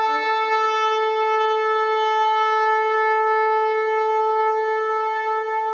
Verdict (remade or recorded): recorded